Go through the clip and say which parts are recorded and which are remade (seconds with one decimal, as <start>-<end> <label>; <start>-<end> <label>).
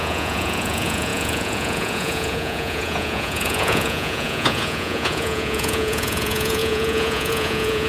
0.0-7.9 remade